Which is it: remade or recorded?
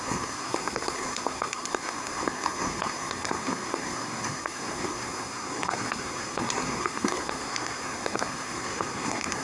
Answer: remade